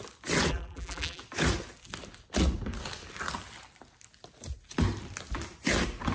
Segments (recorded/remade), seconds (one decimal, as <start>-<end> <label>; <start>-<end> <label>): 0.0-0.5 recorded; 0.5-1.2 remade; 1.2-6.1 recorded

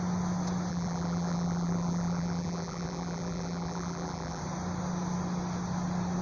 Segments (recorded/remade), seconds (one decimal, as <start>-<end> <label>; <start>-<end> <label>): 0.0-0.7 recorded; 0.7-4.4 remade; 4.4-6.2 recorded

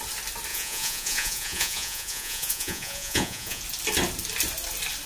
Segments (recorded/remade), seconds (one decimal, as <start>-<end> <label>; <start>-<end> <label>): 0.0-0.5 recorded; 0.5-3.6 remade; 3.6-5.1 recorded

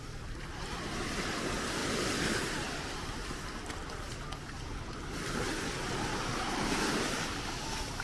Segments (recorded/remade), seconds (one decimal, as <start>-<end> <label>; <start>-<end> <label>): 0.0-1.8 recorded; 1.8-5.9 remade; 5.9-8.0 recorded

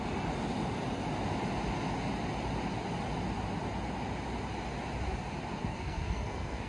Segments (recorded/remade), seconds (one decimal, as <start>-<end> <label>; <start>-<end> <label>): 0.0-5.6 recorded; 5.6-6.7 remade

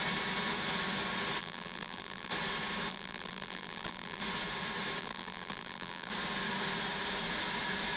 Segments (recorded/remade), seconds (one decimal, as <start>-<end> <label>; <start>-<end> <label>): 0.0-1.4 recorded; 1.4-2.3 remade; 2.3-2.9 recorded; 2.9-4.2 remade; 4.2-5.0 recorded; 5.0-6.1 remade; 6.1-8.0 recorded

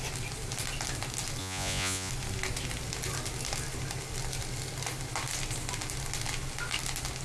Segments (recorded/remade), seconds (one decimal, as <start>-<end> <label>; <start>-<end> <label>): 0.0-1.4 recorded; 1.4-2.1 remade; 2.1-7.2 recorded